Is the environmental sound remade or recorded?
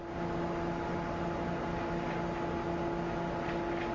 recorded